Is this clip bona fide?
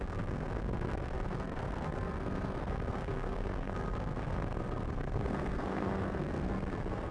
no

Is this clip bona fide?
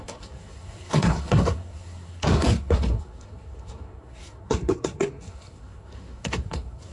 no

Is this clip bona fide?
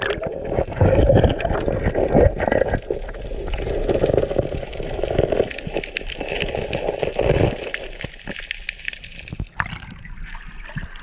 yes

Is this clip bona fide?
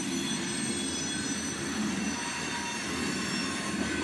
yes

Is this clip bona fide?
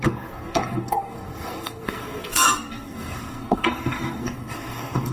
no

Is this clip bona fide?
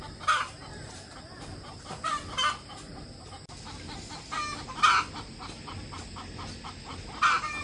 yes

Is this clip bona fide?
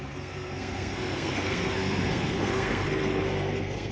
no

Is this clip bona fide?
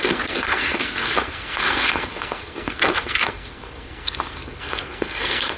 no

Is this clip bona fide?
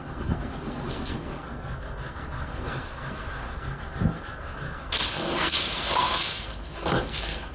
no